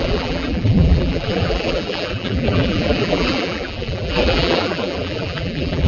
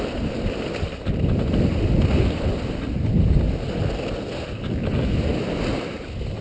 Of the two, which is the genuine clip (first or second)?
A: second